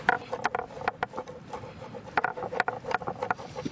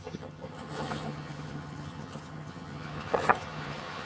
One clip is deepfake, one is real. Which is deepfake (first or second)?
second